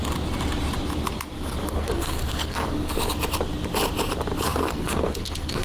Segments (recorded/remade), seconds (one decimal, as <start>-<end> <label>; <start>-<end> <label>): 0.0-1.7 recorded; 1.7-3.0 remade; 3.0-4.4 recorded; 4.4-5.6 remade